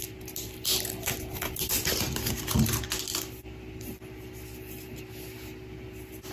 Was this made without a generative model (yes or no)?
yes